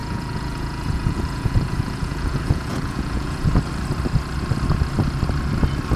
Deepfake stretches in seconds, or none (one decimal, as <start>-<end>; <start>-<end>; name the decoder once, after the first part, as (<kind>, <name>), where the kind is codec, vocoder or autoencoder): 0.0-3.6 (vocoder, Vocos)